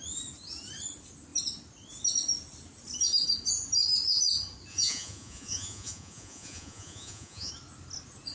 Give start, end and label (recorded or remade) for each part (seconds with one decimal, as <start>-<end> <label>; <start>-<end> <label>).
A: 0.0-4.7 recorded; 4.7-7.5 remade; 7.5-8.3 recorded